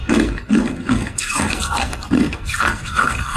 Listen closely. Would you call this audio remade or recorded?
remade